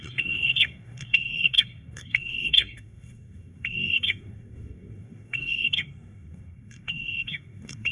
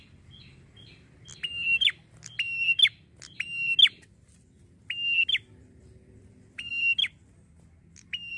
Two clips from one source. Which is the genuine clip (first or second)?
second